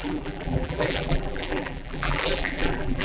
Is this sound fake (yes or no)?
yes